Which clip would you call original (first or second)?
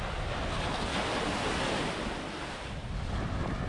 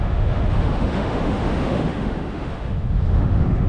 first